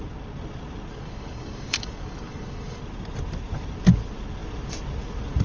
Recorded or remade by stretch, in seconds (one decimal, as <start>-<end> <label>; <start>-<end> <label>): 0.0-0.9 recorded; 0.9-2.8 remade; 2.8-5.4 recorded

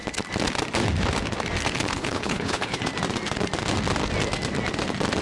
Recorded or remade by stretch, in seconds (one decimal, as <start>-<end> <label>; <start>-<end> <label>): 0.0-1.9 recorded; 1.9-2.8 remade; 2.8-5.2 recorded

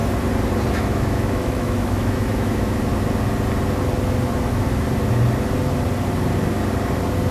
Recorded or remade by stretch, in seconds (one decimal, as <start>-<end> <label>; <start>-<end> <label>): 0.0-0.8 recorded; 0.8-2.9 remade; 2.9-7.3 recorded

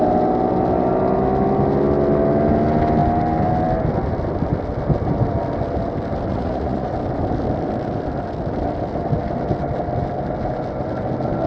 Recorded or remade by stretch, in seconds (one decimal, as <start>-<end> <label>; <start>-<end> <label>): 0.0-6.3 recorded; 6.3-6.9 remade; 6.9-11.5 recorded

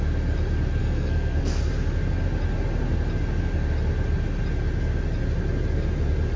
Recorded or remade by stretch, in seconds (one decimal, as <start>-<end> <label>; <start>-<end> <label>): 0.0-0.8 recorded; 0.8-1.6 remade; 1.6-6.4 recorded

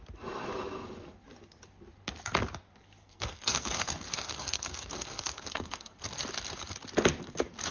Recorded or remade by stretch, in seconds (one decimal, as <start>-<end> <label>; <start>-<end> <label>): 0.0-3.0 recorded; 3.0-6.0 remade; 6.0-7.7 recorded